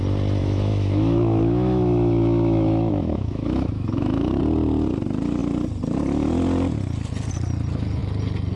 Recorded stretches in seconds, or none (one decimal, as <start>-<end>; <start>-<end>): 0.0-0.4; 4.4-8.6